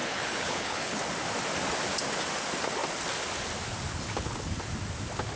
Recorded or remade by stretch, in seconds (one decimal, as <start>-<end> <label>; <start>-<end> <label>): 0.0-1.0 remade; 1.0-3.9 recorded; 3.9-4.6 remade; 4.6-5.4 recorded